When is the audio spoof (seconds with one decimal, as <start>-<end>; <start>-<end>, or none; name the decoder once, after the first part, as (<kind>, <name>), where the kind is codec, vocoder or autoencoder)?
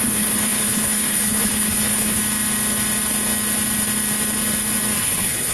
0.0-2.2 (codec, HILCodec); 5.0-5.5